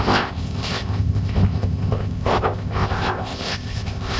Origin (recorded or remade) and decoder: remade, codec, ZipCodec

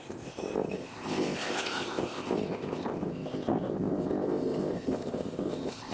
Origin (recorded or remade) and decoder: remade, codec, ZipCodec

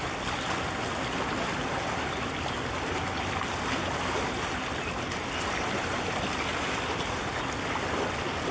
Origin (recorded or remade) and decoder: recorded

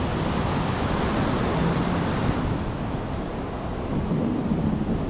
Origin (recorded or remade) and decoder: recorded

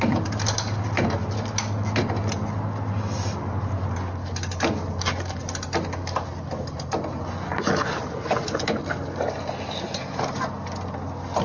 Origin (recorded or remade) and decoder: recorded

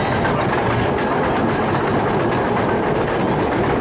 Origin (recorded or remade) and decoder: recorded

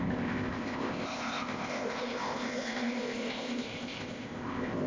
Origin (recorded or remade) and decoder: remade, codec, ZipCodec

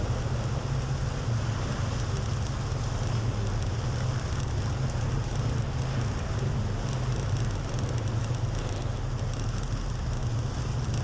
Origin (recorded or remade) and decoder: recorded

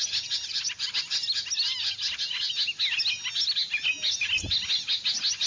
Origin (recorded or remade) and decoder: recorded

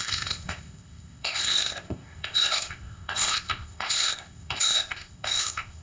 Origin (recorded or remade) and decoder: remade, codec, ZipCodec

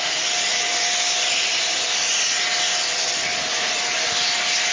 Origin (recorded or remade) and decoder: recorded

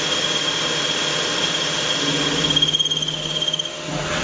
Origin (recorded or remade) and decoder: recorded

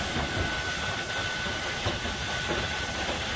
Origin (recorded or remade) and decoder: recorded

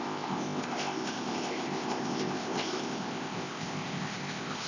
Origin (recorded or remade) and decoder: remade, codec, ZipCodec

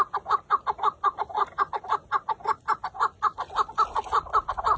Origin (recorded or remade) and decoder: recorded